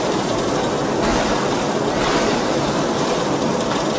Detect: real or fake real